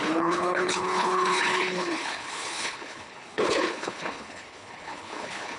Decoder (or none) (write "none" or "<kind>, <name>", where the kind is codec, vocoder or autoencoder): codec, HILCodec